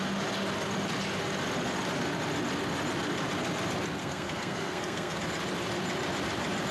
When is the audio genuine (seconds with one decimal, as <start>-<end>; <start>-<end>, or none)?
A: 0.0-4.0; 5.2-6.7